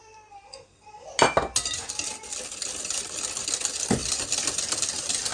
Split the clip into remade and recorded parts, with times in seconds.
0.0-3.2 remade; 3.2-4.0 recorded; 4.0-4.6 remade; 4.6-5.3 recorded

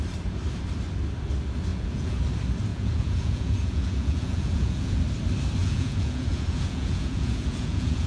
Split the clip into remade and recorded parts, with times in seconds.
0.0-1.7 recorded; 1.7-2.2 remade; 2.2-2.7 recorded; 2.7-5.0 remade; 5.0-5.6 recorded; 5.6-8.1 remade

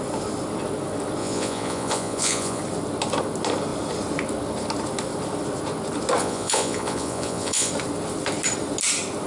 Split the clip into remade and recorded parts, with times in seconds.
0.0-1.2 recorded; 1.2-2.6 remade; 2.6-6.2 recorded; 6.2-7.7 remade; 7.7-9.3 recorded

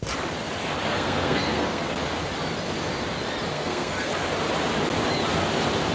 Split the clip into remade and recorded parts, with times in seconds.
0.0-0.9 recorded; 0.9-2.0 remade; 2.0-3.5 recorded; 3.5-4.1 remade; 4.1-5.9 recorded

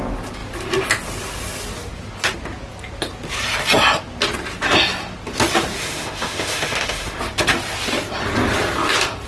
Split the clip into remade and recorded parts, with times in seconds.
0.0-5.8 recorded; 5.8-7.2 remade; 7.2-9.3 recorded

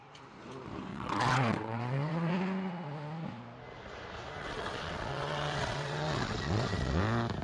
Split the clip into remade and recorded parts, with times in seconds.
0.0-0.9 recorded; 0.9-2.3 remade; 2.3-4.4 recorded; 4.4-7.0 remade; 7.0-7.4 recorded

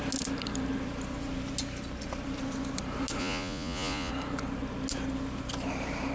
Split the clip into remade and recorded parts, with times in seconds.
0.0-3.2 recorded; 3.2-4.1 remade; 4.1-6.1 recorded